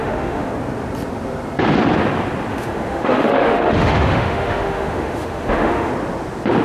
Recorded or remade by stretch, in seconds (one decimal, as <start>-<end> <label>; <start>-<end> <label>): 0.0-0.5 remade; 0.5-2.5 recorded; 2.5-5.9 remade; 5.9-6.6 recorded